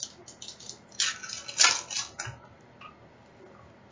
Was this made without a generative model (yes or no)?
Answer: yes